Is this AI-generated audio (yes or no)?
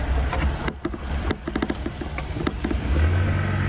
no